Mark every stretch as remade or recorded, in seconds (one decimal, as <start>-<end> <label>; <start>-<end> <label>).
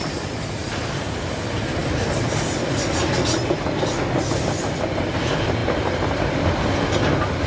0.0-0.6 recorded; 0.6-1.3 remade; 1.3-7.5 recorded